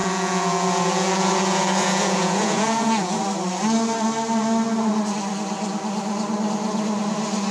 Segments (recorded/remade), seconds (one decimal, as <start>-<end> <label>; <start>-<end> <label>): 0.0-3.2 remade; 3.2-7.5 recorded